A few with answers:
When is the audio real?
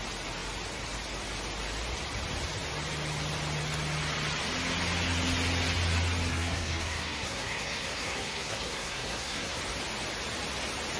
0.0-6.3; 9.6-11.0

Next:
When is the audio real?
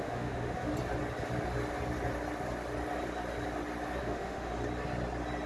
0.7-4.0; 4.5-5.5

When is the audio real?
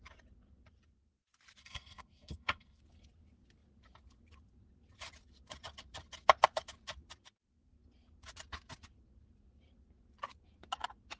0.0-1.6; 2.8-11.2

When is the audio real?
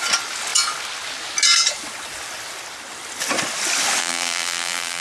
0.0-4.0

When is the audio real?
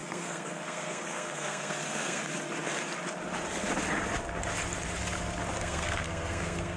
2.2-5.6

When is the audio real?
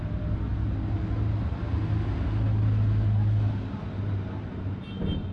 0.0-5.3